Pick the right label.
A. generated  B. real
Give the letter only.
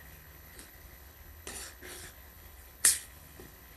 A